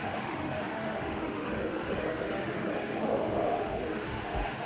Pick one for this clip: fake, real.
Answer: fake